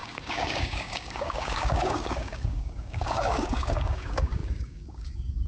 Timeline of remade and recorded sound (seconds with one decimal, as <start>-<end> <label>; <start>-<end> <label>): 0.0-5.5 remade